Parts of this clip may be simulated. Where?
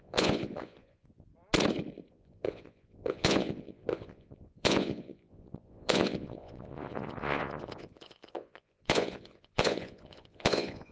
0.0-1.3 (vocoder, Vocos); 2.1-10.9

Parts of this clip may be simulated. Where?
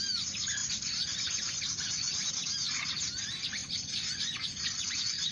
0.6-2.3 (vocoder, Vocos); 3.6-5.3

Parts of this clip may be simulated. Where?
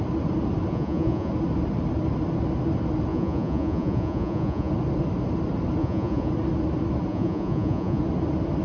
0.7-1.3 (vocoder, Vocos); 3.1-4.7; 5.8-6.3; 7.1-8.0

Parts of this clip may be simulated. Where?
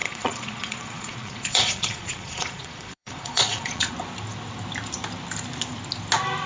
0.0-3.9 (vocoder, Vocos)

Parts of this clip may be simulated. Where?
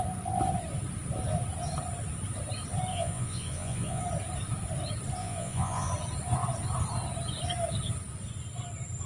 2.9-4.0 (vocoder, Vocos); 5.2-5.9